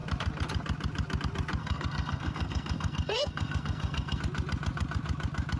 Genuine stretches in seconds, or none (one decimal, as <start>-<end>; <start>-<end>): 0.0-1.6; 4.2-5.6